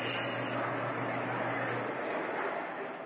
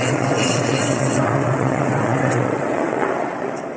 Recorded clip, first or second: first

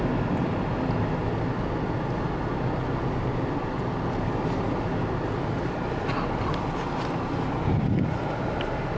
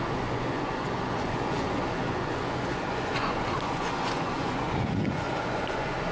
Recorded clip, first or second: first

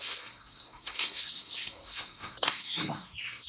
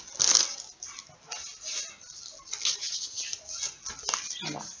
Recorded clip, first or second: second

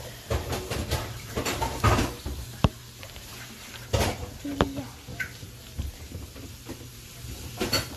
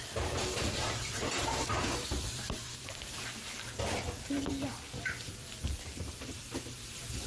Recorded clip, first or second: first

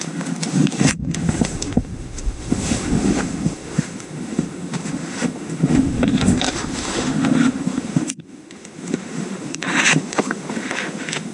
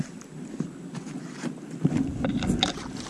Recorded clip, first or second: second